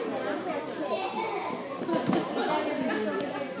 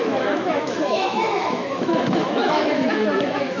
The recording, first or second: first